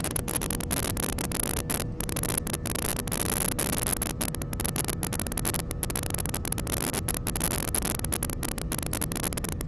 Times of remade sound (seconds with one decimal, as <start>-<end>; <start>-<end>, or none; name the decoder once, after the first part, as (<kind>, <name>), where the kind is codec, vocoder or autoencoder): none